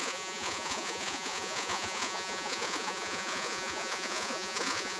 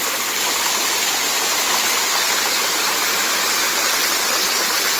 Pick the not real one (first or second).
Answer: first